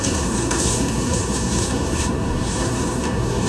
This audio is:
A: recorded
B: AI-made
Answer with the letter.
B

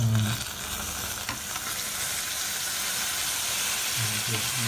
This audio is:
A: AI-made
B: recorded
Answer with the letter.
B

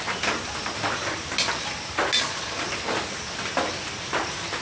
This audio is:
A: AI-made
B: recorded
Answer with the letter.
B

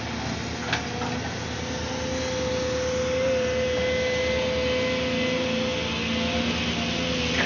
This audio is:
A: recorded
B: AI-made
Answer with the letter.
A